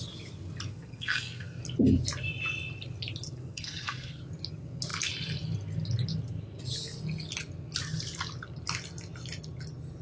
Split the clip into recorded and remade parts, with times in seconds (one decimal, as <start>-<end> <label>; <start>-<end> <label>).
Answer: 0.0-0.7 recorded; 0.7-1.6 remade; 1.6-3.5 recorded; 3.5-4.2 remade; 4.2-10.0 recorded